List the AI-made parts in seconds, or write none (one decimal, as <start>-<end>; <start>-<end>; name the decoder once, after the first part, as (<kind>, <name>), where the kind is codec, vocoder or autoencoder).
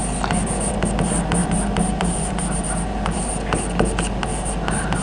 1.4-3.2 (vocoder, BigVGAN v2)